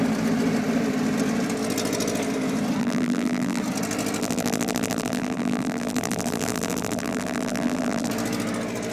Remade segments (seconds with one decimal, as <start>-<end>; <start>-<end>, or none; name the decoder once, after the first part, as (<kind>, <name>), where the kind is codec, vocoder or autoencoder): 2.8-3.6 (vocoder, BigVGAN v2); 4.2-8.1